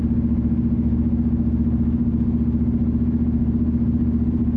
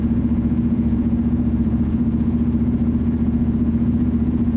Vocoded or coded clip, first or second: second